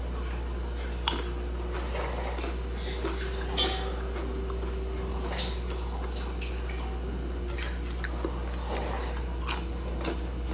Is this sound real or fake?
real